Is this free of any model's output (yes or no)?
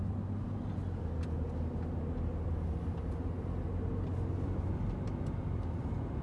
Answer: yes